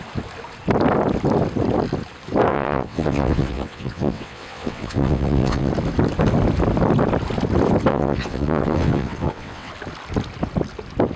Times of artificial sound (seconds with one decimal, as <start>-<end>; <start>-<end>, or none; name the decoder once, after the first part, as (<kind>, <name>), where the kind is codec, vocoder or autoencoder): 2.5-5.7 (vocoder, WaveNeXt); 7.9-9.7